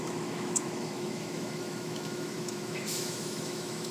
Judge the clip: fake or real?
fake